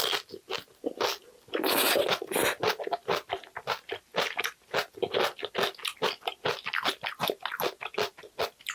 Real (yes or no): yes